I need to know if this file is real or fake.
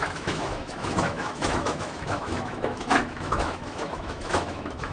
fake